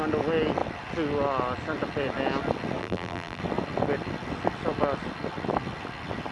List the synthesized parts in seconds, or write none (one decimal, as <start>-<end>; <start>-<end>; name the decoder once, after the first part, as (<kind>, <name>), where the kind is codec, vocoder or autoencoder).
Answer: 2.8-3.4 (vocoder, BigVGAN v2)